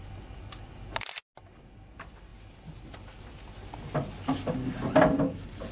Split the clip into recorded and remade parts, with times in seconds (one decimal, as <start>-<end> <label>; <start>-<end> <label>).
0.0-5.7 recorded